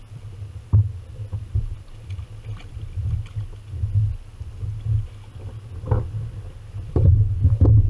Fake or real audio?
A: real